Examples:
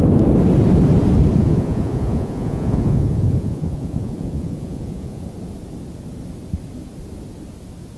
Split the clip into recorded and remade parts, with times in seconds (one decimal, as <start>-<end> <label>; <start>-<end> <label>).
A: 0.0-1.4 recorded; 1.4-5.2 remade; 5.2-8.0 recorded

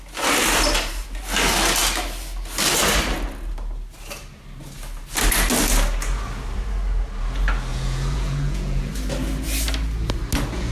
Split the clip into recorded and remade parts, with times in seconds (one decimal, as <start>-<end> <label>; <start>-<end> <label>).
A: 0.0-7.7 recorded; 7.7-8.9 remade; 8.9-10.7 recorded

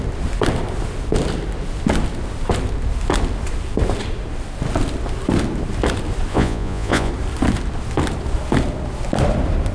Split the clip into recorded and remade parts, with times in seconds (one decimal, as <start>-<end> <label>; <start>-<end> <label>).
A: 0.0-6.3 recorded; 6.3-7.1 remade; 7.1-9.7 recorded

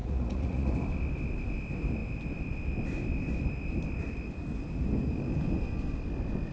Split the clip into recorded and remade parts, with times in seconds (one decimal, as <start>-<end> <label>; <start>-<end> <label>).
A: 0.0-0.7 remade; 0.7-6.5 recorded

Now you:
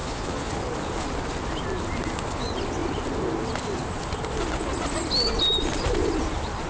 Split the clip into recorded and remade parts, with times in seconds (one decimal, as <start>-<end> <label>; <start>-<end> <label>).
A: 0.0-0.5 remade; 0.5-6.7 recorded